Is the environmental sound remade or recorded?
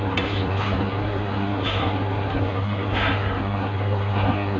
remade